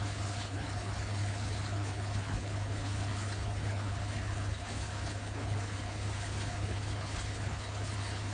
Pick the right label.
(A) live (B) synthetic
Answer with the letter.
B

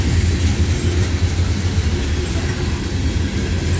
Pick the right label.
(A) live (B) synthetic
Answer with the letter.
A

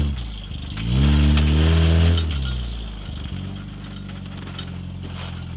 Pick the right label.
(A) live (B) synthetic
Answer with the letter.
A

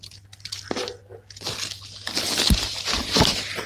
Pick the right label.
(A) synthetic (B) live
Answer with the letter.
B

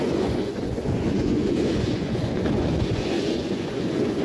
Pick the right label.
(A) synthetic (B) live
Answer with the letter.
A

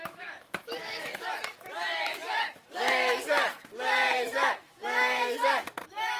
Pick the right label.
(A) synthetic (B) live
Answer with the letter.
A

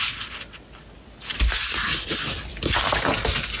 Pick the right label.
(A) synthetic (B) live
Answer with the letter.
B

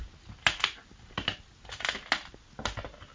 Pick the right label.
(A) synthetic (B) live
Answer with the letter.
B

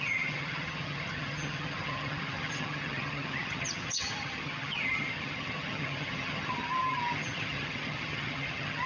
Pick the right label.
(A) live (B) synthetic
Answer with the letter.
B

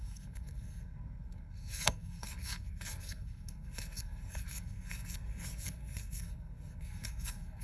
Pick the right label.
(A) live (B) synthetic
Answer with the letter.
B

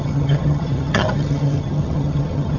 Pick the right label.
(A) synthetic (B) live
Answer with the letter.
A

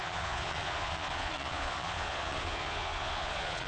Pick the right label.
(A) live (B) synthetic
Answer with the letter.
B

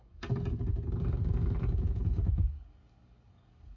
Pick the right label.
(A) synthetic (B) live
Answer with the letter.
A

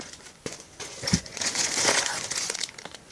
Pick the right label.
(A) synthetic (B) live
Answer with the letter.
A